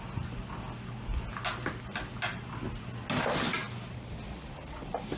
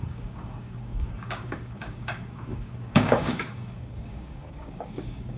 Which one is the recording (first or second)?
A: first